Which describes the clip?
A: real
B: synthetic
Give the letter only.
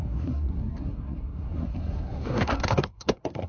B